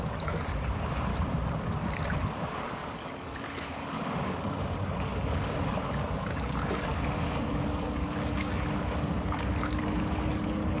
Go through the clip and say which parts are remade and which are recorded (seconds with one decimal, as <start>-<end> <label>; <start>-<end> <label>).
0.0-1.1 remade; 1.1-1.6 recorded; 1.6-10.8 remade